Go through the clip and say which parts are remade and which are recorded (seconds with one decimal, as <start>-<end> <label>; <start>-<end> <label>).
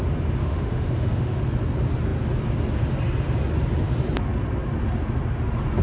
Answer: 0.0-0.4 recorded; 0.4-1.4 remade; 1.4-5.8 recorded